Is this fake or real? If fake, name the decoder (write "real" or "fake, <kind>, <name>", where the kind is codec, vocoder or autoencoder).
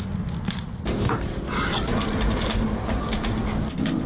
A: real